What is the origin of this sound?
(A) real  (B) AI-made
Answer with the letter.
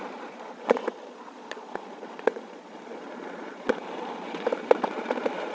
B